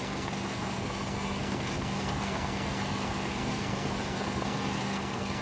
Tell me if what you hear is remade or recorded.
remade